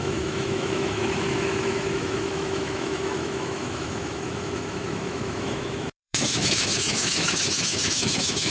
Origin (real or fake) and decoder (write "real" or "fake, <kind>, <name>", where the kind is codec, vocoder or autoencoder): fake, autoencoder, DAC-VAE